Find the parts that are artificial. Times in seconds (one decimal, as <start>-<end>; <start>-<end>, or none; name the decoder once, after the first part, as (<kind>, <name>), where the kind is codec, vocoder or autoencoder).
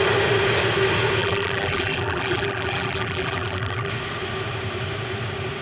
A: 1.2-3.9 (vocoder, BigVGAN v2)